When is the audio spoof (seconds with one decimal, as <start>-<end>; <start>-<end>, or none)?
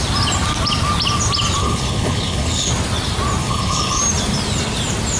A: 1.6-2.7; 3.4-4.0